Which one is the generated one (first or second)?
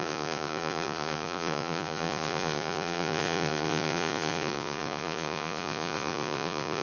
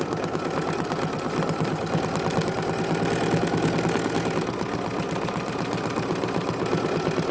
first